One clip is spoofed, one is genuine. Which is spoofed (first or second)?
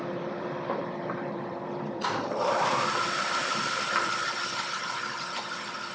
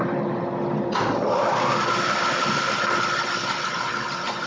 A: first